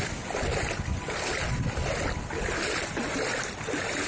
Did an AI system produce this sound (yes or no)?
no